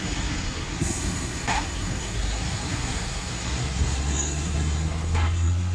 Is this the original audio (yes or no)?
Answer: no